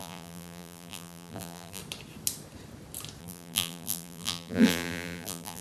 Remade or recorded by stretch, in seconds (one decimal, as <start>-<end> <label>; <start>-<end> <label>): 0.0-1.8 remade; 1.8-3.2 recorded; 3.2-5.6 remade